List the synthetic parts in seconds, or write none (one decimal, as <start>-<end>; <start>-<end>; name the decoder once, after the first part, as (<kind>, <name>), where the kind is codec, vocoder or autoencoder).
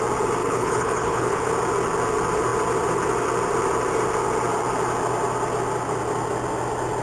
0.4-1.5 (codec, HILCodec)